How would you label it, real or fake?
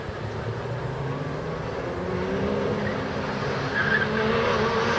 real